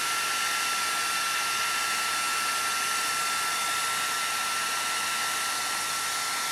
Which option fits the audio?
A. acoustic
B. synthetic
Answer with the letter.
A